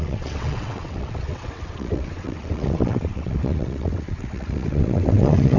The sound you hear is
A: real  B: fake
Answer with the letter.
B